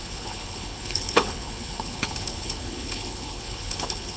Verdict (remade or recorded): remade